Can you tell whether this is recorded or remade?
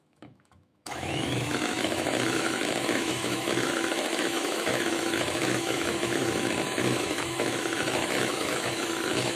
remade